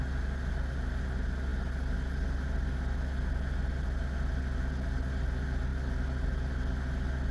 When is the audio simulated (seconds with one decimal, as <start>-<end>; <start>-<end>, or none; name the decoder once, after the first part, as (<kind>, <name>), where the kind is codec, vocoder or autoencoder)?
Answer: none